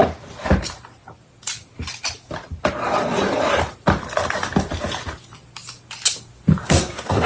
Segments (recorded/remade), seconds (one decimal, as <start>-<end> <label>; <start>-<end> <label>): 0.0-6.6 recorded; 6.6-7.3 remade